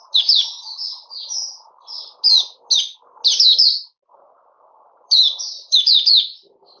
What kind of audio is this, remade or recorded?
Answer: recorded